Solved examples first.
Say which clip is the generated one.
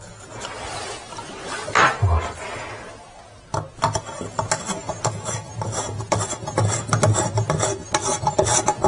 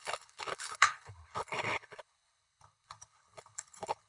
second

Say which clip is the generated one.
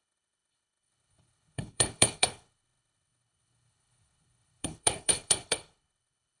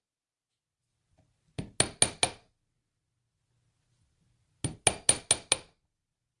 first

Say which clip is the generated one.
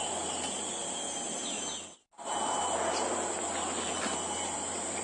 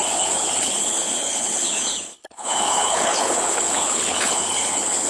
second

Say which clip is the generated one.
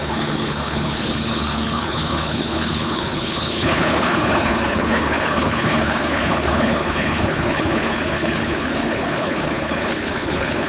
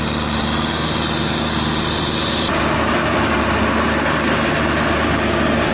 first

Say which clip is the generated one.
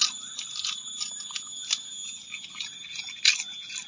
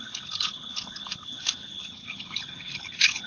second